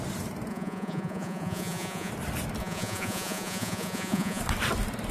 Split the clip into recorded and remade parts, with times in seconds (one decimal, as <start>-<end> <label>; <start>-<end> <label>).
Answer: 0.0-0.5 recorded; 0.5-2.1 remade; 2.1-2.6 recorded; 2.6-4.4 remade; 4.4-5.1 recorded